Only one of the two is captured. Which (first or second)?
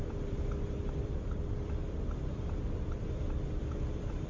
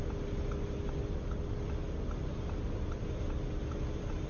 second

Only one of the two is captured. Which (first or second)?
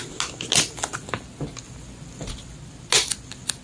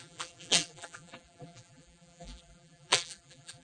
first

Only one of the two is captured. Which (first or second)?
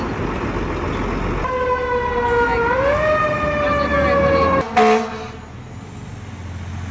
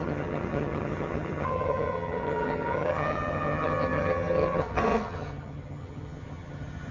first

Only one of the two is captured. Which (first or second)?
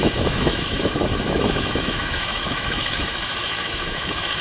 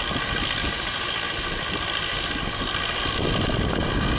second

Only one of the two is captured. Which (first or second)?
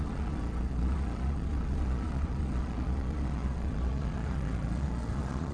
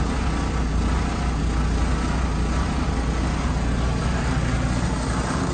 second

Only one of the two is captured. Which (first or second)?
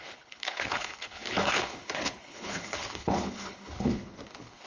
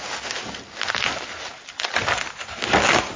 second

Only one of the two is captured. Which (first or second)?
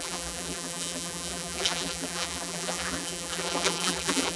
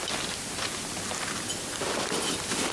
second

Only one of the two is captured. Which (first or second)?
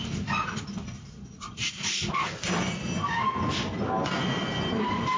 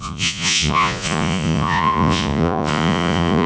first